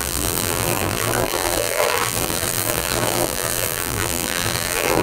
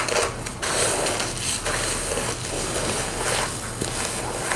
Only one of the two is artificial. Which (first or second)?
first